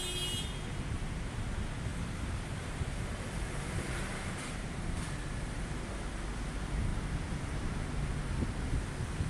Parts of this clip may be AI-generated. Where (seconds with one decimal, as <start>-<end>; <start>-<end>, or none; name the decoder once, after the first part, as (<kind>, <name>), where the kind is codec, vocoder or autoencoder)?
1.9-5.7 (vocoder, BigVGAN v2)